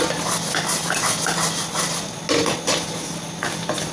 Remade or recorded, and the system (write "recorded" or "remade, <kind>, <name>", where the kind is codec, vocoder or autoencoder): recorded